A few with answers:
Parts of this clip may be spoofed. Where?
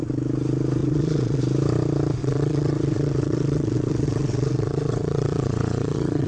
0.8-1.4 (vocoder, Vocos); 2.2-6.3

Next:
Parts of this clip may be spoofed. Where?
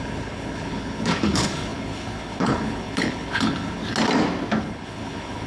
0.0-3.8 (codec, HILCodec); 4.6-5.5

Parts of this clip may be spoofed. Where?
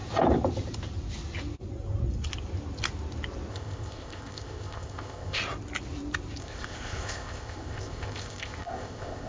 3.5-5.4 (codec, ZipCodec); 6.4-9.3